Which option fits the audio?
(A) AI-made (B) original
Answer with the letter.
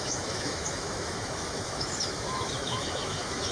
A